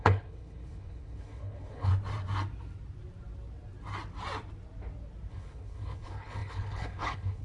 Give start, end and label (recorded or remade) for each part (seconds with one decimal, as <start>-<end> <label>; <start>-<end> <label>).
0.0-1.9 remade; 1.9-5.3 recorded; 5.3-7.4 remade